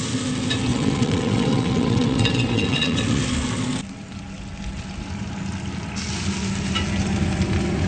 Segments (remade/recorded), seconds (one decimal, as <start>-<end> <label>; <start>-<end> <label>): 0.0-0.7 recorded; 0.7-3.2 remade; 3.2-7.9 recorded